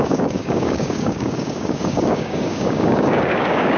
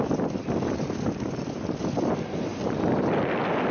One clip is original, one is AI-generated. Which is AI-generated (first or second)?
first